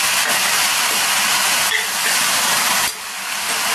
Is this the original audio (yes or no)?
yes